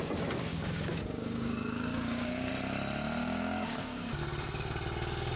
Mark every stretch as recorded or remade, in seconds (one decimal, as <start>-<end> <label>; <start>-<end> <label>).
0.0-0.5 recorded; 0.5-2.5 remade; 2.5-3.2 recorded; 3.2-4.2 remade; 4.2-5.4 recorded